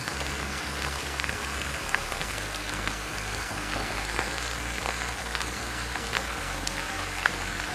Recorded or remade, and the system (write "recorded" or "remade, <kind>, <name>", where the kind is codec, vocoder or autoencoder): remade, codec, SNAC